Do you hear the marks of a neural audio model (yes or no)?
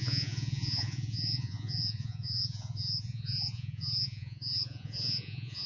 yes